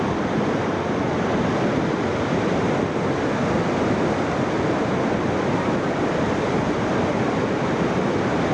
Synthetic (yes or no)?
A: no